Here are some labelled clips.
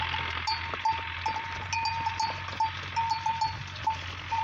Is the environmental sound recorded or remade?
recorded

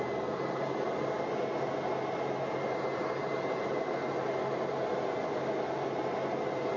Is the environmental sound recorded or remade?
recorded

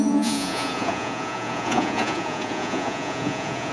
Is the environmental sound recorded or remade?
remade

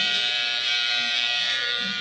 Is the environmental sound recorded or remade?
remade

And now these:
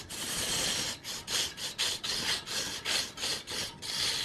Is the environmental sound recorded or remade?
recorded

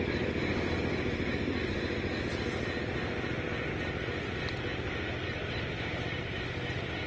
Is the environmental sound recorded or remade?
recorded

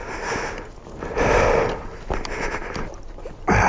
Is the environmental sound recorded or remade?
recorded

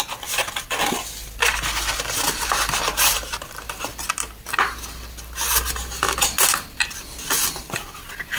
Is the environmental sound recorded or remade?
recorded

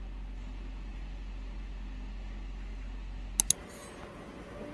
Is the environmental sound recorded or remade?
recorded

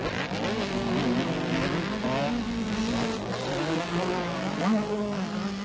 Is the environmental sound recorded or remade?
remade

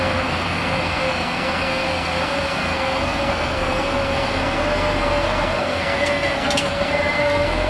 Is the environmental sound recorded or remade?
remade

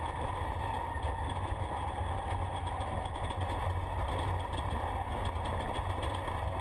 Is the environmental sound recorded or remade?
recorded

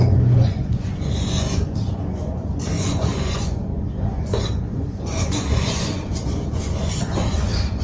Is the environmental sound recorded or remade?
remade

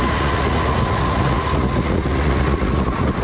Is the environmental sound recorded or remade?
remade